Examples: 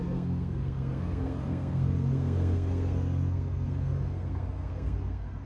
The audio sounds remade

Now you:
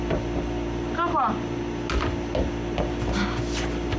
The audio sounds recorded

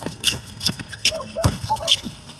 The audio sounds remade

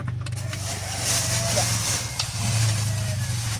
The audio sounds recorded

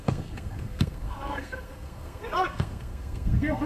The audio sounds remade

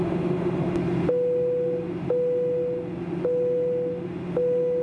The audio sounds recorded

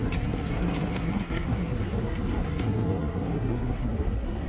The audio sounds remade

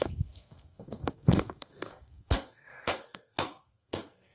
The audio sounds remade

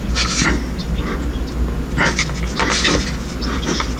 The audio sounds recorded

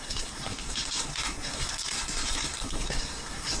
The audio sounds remade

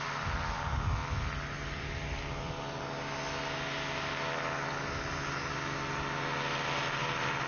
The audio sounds recorded